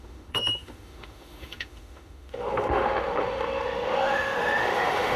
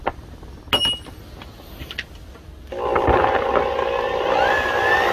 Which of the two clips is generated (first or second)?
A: first